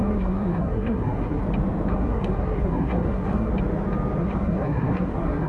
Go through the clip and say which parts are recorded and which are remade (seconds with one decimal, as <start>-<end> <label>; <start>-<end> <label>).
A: 0.0-1.4 remade; 1.4-1.9 recorded; 1.9-3.5 remade; 3.5-4.2 recorded; 4.2-5.5 remade